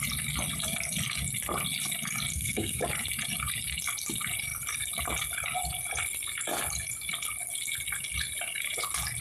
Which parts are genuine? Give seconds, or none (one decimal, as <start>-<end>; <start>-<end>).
0.0-2.3; 2.8-9.2